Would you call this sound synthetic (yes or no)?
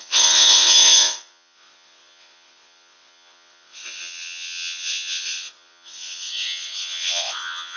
yes